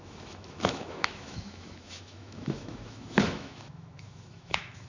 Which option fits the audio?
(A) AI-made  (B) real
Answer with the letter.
A